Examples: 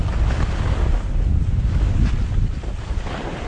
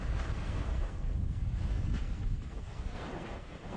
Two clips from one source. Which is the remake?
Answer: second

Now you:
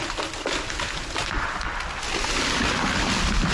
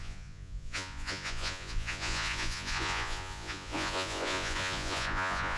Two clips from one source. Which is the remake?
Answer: second